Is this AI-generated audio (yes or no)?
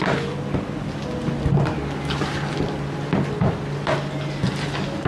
no